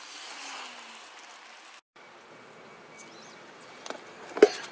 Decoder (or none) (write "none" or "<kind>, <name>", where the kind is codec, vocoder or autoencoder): none